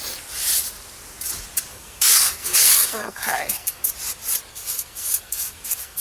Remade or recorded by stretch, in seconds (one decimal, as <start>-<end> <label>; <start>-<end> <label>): 0.0-1.7 recorded; 1.7-3.9 remade; 3.9-4.5 recorded; 4.5-6.0 remade